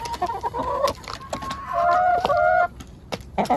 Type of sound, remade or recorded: recorded